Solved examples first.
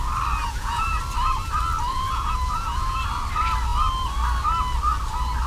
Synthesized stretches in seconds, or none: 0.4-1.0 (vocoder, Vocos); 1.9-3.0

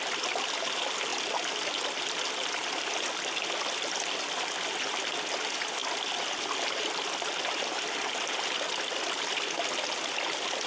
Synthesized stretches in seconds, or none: none